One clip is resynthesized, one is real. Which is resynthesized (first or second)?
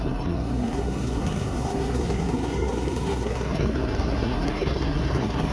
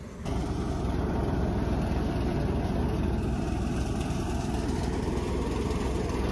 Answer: first